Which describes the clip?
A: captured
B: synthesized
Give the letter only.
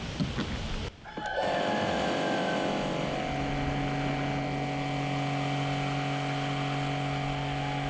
A